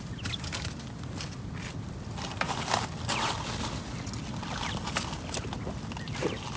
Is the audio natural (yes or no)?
yes